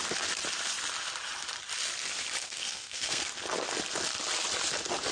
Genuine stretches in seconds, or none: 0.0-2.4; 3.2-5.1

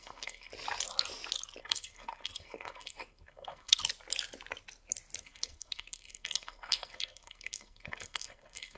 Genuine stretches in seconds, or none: 0.5-1.6; 3.8-5.2

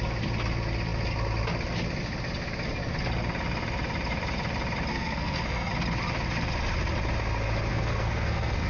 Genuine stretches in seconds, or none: 0.0-4.9; 5.7-7.7

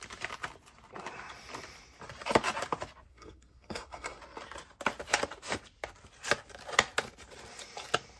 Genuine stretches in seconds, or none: 0.0-3.1; 4.2-8.2

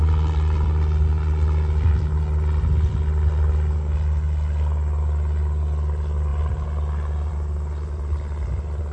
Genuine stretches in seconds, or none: 0.0-8.9